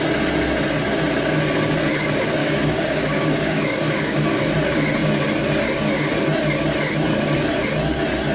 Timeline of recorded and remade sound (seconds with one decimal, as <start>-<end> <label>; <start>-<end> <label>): 0.0-2.4 recorded; 2.4-4.5 remade; 4.5-8.3 recorded